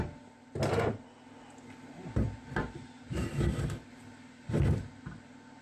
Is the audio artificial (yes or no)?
no